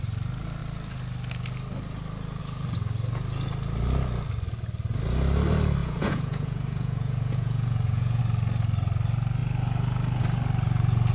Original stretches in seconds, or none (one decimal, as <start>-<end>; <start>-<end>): 0.0-5.8; 8.2-11.1